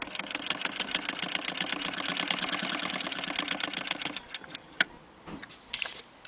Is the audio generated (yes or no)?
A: no